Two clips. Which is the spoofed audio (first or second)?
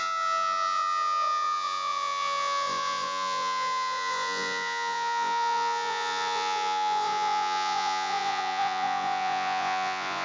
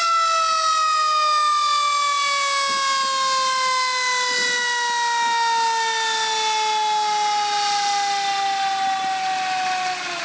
first